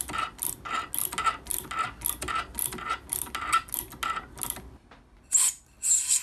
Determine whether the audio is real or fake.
real